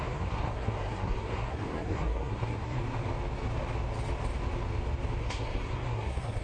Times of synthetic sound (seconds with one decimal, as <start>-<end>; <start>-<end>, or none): 0.0-2.8; 5.2-6.4